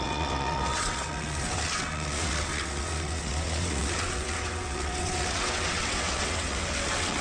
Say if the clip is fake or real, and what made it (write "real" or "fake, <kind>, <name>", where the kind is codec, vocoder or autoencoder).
fake, vocoder, WaveNeXt